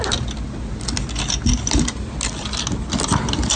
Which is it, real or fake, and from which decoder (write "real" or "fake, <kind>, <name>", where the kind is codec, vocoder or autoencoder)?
real